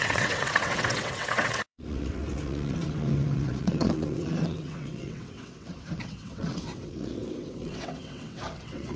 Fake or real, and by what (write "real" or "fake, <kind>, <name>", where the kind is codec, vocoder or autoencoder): fake, vocoder, WaveNeXt